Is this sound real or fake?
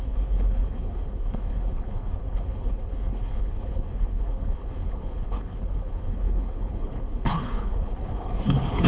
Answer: fake